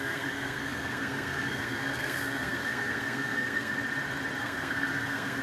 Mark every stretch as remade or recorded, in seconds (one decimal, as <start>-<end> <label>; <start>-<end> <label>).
0.0-3.8 remade; 3.8-4.4 recorded; 4.4-5.4 remade